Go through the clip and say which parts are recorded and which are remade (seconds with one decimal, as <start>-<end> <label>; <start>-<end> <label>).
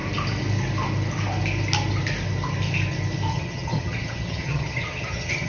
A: 0.0-3.3 recorded; 3.3-5.5 remade